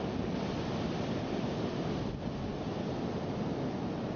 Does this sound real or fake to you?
real